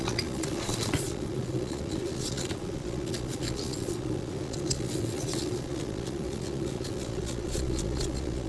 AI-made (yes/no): yes